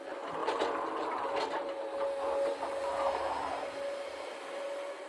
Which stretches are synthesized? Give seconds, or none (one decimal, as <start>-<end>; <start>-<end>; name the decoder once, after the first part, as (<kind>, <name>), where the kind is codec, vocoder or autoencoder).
none